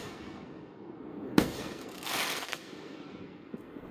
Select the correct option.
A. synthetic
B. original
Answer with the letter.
A